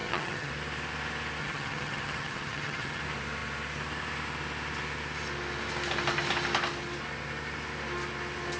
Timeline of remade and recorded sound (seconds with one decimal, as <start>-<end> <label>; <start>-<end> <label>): 0.0-0.5 remade; 0.5-1.4 recorded; 1.4-3.0 remade; 3.0-8.6 recorded